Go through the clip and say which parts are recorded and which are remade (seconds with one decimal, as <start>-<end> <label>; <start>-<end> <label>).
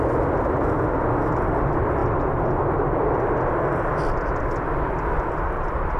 0.0-6.0 recorded